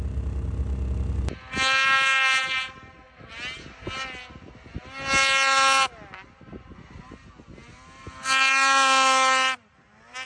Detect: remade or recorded recorded